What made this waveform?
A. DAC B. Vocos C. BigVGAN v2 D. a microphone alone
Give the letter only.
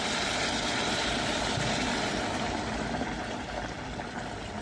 C